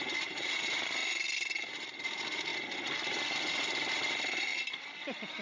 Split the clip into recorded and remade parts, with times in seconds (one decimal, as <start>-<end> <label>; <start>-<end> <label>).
0.0-1.0 remade; 1.0-2.0 recorded; 2.0-2.5 remade; 2.5-3.0 recorded; 3.0-4.5 remade; 4.5-5.0 recorded; 5.0-5.4 remade